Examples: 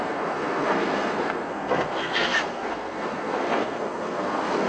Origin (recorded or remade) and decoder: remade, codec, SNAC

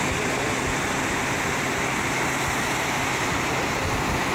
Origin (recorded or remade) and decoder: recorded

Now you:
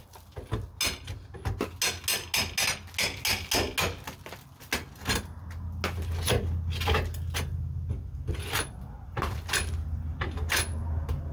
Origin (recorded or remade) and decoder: recorded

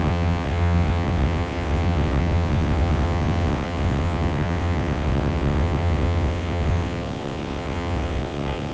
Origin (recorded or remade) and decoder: remade, vocoder, WaveNeXt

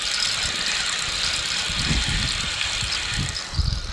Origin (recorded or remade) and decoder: recorded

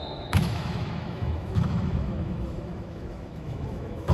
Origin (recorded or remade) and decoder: remade, autoencoder, DAC-VAE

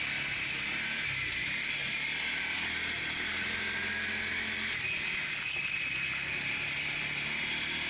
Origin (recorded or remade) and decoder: recorded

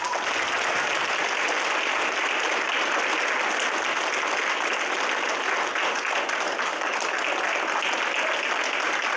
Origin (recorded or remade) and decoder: recorded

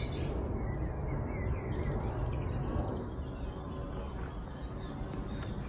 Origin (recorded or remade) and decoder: recorded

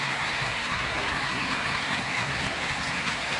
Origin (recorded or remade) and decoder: remade, codec, SNAC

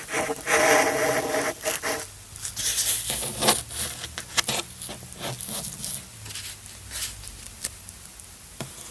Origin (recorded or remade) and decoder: recorded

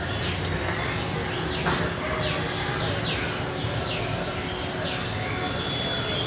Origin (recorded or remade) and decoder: recorded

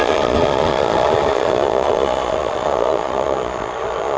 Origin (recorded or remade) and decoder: remade, vocoder, Vocos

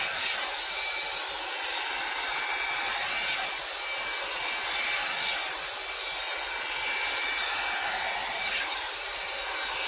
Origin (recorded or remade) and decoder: recorded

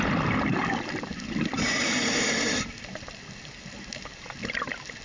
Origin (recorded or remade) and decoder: recorded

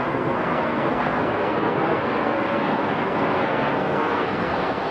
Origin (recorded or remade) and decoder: remade, codec, SNAC